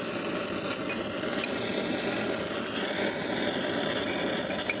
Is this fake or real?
real